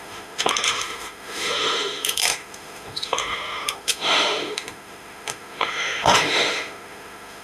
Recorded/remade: remade